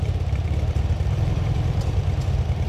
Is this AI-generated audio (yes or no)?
yes